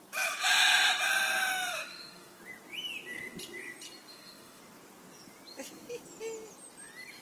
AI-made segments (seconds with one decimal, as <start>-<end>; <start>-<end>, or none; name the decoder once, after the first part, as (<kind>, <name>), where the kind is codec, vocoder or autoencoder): 1.7-2.4 (autoencoder, DAC-VAE); 4.1-4.6